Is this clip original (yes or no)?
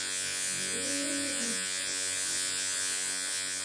no